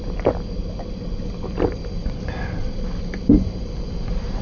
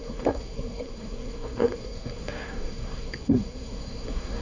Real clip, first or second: first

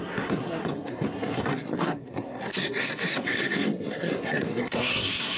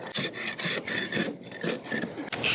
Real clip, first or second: second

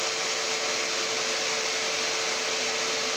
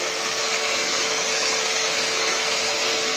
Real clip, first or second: first